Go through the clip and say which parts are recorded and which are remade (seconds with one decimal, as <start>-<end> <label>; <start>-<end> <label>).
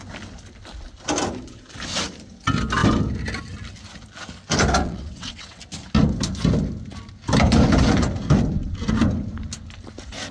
0.0-4.8 recorded; 4.8-5.6 remade; 5.6-10.3 recorded